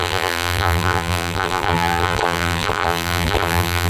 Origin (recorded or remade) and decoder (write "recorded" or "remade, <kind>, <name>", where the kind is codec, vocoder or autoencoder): remade, vocoder, BigVGAN v2